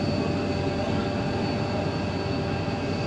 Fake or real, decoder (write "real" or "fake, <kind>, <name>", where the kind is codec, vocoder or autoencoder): real